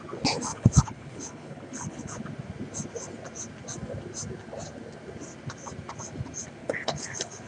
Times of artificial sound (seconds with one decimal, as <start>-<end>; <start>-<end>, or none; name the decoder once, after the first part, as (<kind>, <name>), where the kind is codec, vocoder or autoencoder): 0.5-2.2 (codec, HILCodec); 6.6-7.5